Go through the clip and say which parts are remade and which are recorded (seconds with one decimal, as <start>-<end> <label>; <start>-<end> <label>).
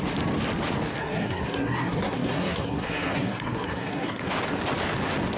0.0-1.0 recorded; 1.0-4.2 remade; 4.2-5.4 recorded